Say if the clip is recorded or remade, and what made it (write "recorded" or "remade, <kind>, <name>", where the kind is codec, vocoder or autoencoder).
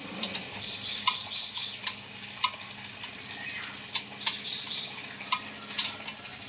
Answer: recorded